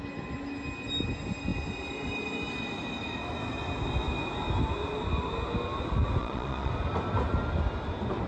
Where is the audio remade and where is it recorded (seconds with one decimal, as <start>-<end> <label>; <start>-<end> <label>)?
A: 0.0-6.2 recorded; 6.2-6.7 remade; 6.7-8.3 recorded